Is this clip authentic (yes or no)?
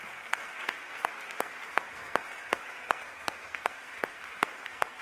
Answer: no